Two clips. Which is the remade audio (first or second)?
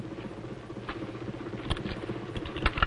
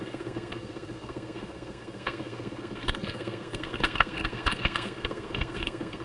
second